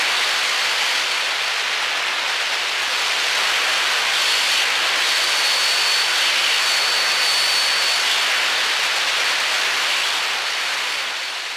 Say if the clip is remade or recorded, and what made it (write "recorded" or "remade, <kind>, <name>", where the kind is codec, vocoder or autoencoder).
recorded